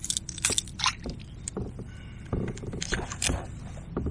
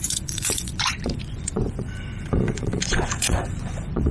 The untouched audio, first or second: first